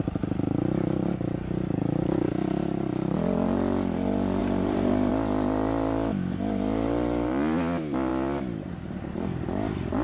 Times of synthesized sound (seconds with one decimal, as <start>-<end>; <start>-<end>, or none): 4.4-5.1